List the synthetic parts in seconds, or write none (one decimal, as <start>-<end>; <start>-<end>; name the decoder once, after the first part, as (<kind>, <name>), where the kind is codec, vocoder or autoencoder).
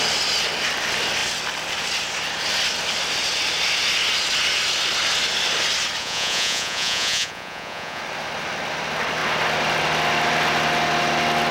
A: 6.0-8.0 (vocoder, Vocos)